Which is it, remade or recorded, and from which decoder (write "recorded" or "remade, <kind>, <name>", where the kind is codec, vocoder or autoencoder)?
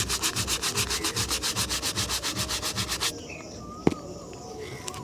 recorded